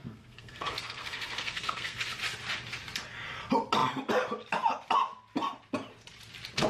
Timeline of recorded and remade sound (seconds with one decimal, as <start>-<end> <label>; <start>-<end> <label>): 0.0-2.1 remade; 2.1-6.7 recorded